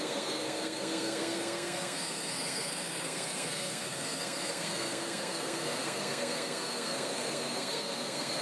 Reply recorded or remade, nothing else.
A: remade